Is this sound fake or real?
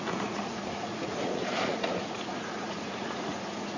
fake